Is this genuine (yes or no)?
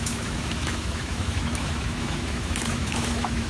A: no